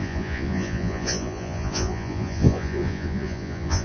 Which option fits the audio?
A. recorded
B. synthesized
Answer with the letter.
B